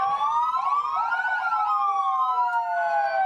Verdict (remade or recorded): recorded